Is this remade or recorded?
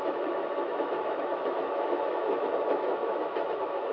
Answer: remade